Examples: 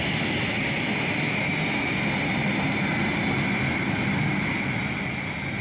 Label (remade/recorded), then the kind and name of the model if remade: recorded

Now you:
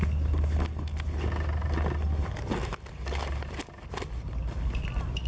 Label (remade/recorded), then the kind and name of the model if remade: recorded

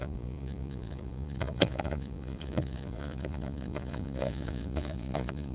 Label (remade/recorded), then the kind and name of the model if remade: remade, vocoder, Vocos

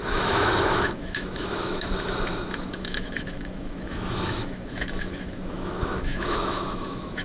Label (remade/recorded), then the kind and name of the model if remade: remade, autoencoder, DAC-VAE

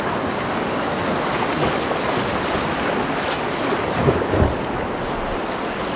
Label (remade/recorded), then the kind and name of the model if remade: recorded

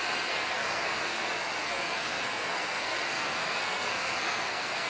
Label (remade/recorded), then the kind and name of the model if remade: remade, codec, SNAC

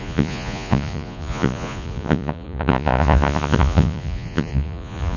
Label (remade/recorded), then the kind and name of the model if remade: remade, vocoder, Vocos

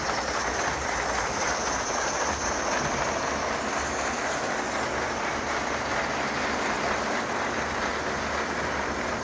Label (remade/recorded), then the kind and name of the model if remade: recorded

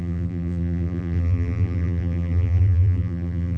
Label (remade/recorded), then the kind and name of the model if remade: remade, vocoder, BigVGAN v2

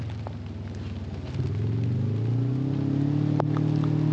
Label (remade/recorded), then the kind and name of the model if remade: recorded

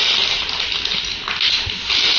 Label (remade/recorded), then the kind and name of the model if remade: recorded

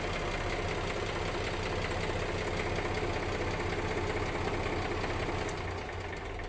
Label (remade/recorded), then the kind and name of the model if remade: recorded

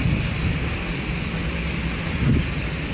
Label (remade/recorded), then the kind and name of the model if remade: recorded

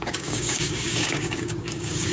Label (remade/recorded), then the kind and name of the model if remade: remade, codec, DAC